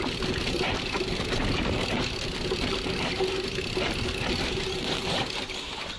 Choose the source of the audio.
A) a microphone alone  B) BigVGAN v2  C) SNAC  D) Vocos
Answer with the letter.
A